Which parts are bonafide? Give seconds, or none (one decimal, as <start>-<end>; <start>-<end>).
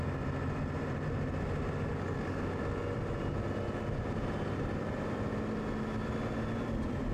0.0-1.9; 2.6-7.1